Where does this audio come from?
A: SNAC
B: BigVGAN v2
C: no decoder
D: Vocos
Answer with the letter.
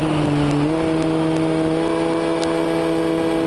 C